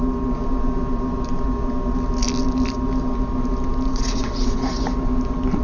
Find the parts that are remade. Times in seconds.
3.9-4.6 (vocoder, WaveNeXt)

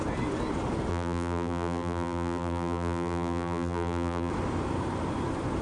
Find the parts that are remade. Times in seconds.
0.9-4.3 (vocoder, BigVGAN v2)

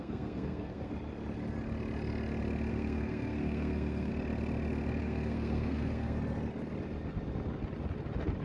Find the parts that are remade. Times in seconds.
0.0-0.9 (codec, SNAC); 2.7-4.1; 5.0-6.2

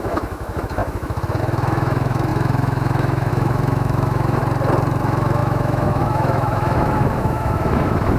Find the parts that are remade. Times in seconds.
0.0-4.4 (autoencoder, DAC-VAE); 5.0-8.2

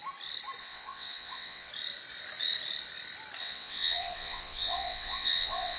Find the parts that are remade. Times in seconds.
0.6-1.7 (vocoder, WaveNeXt); 3.4-5.8

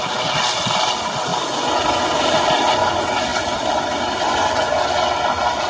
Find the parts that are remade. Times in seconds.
none

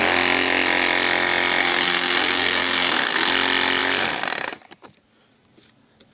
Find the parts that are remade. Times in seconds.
1.6-3.3 (codec, SNAC)

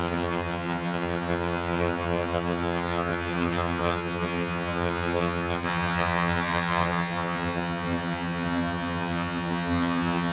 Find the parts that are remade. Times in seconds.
0.0-10.3 (vocoder, HiFi-GAN)